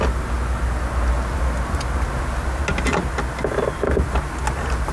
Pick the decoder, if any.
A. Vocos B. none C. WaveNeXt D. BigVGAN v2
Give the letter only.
B